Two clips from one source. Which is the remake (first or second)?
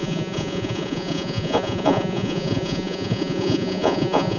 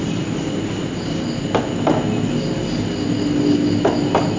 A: first